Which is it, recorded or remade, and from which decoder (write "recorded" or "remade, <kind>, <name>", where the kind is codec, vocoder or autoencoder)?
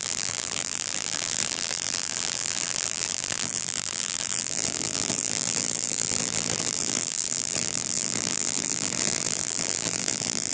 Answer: remade, vocoder, BigVGAN v2